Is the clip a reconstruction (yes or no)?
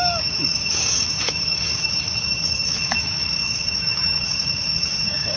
yes